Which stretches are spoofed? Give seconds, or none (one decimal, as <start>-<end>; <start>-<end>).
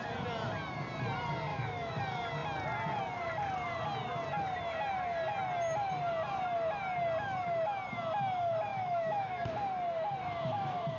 1.5-2.0; 8.7-9.5